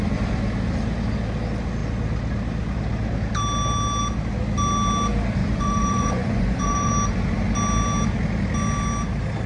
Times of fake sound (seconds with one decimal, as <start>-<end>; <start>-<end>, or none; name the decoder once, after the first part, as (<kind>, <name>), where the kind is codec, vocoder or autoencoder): 5.4-6.9 (vocoder, Vocos)